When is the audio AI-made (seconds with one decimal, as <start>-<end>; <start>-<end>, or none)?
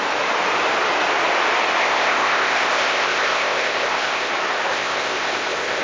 1.8-4.3; 4.7-5.8